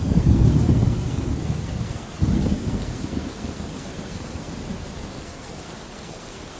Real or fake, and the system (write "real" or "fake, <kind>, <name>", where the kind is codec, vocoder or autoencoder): fake, codec, SNAC